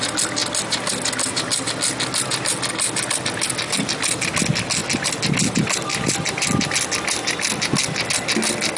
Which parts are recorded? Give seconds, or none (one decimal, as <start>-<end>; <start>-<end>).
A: 0.0-4.8; 5.3-5.9; 6.7-8.8